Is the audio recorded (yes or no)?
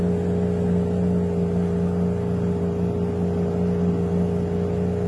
yes